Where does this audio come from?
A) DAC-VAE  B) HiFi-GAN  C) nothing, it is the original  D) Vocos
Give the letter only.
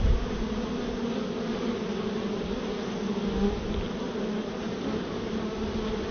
C